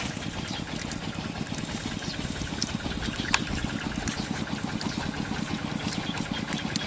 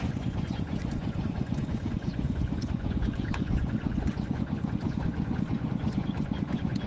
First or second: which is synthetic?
second